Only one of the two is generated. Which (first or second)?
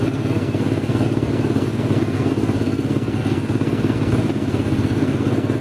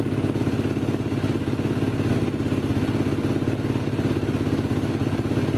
first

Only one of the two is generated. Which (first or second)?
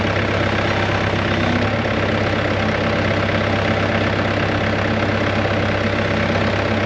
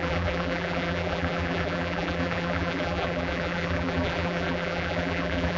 second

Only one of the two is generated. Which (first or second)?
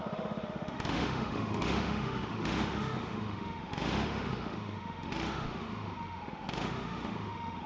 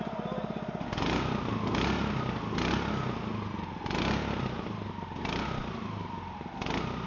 first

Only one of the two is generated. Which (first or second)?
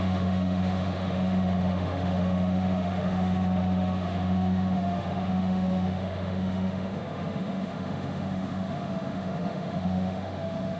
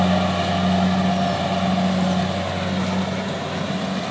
first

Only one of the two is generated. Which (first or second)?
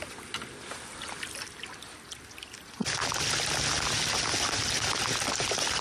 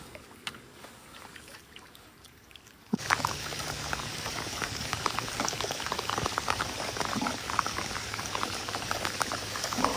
second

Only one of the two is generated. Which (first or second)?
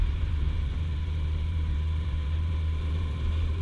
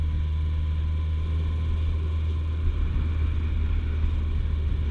first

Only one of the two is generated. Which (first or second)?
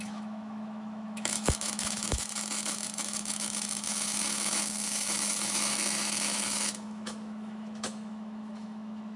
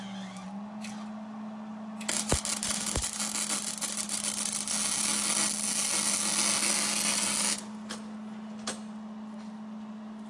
first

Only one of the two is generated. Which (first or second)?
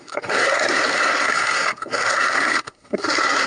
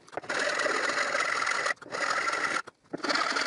first